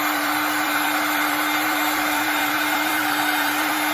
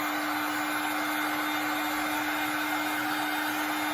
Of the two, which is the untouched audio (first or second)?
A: second